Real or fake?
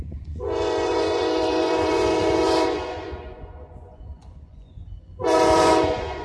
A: fake